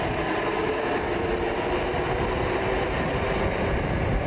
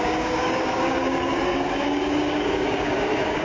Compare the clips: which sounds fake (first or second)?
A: second